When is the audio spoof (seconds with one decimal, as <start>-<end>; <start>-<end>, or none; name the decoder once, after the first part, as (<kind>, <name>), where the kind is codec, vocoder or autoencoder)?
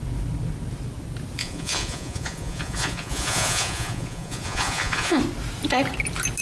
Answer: 1.4-5.2 (vocoder, Vocos)